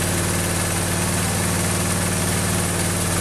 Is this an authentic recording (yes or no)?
yes